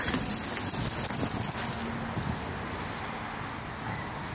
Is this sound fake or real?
real